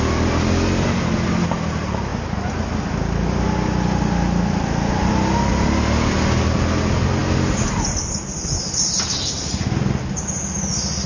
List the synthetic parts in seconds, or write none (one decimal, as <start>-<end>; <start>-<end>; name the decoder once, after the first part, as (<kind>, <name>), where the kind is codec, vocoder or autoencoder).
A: none